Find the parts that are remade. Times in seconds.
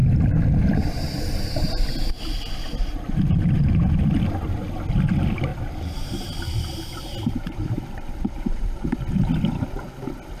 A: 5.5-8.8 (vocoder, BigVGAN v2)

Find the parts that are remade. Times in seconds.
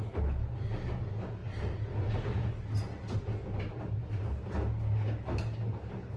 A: none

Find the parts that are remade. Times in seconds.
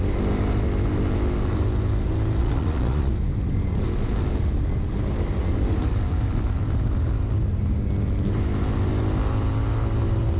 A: 2.4-3.1 (vocoder, Vocos)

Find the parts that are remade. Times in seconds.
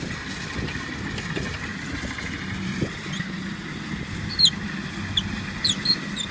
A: none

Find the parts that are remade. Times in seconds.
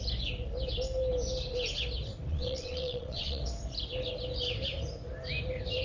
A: 2.3-3.4 (vocoder, WaveNeXt)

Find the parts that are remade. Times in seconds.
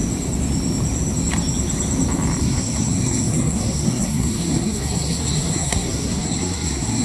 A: 2.4-7.0 (codec, SNAC)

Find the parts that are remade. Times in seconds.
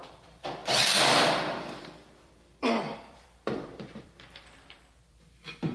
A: 0.0-5.7 (vocoder, BigVGAN v2)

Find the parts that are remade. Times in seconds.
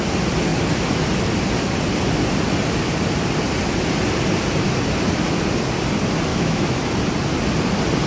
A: 6.3-6.8 (autoencoder, DAC-VAE)